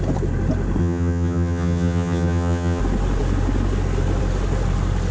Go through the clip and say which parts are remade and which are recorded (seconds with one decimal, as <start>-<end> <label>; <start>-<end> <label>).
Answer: 0.0-0.8 recorded; 0.8-2.8 remade; 2.8-5.1 recorded